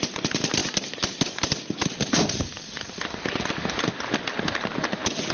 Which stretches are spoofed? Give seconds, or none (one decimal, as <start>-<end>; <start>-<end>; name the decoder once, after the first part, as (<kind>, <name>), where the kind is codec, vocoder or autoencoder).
none